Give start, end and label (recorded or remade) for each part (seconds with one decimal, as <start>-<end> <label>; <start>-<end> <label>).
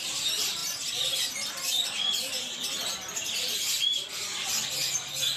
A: 0.0-5.4 remade